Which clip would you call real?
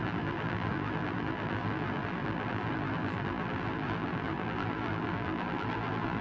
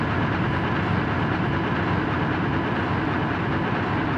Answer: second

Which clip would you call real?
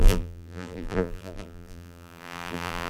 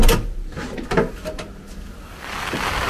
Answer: second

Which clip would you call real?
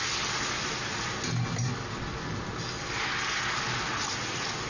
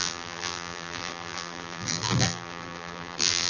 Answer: first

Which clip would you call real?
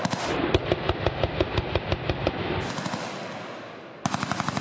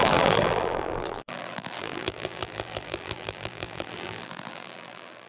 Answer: first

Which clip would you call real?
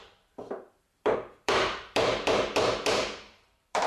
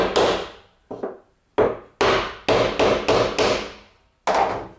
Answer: second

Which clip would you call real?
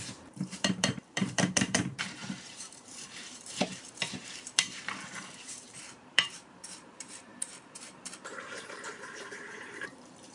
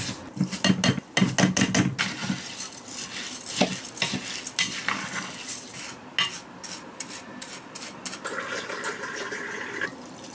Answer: second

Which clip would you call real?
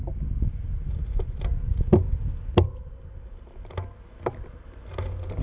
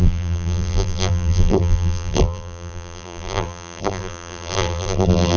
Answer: first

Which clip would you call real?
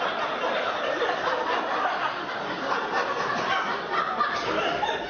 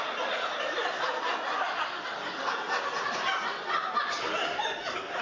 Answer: second